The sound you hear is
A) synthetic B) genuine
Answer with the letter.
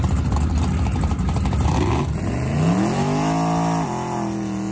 B